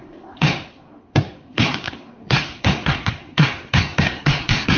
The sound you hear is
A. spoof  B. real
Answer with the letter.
A